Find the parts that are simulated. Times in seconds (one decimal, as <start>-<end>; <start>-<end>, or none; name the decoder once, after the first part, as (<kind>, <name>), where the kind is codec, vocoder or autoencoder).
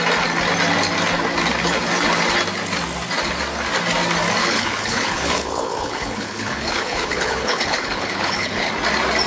4.4-8.7 (codec, HILCodec)